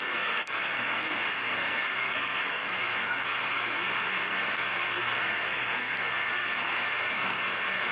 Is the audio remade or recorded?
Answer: remade